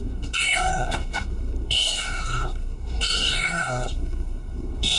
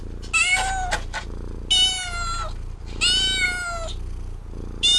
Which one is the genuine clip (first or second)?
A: second